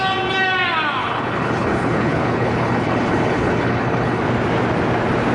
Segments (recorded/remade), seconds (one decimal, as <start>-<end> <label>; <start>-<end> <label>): 0.0-1.0 recorded; 1.0-4.2 remade; 4.2-5.3 recorded